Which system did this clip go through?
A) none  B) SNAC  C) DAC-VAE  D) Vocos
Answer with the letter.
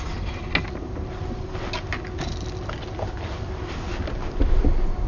A